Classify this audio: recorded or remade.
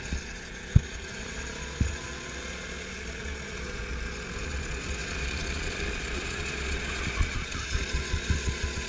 remade